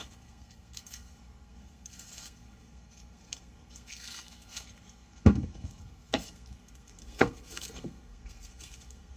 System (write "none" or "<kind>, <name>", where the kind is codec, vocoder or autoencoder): codec, SNAC